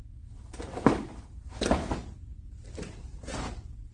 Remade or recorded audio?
recorded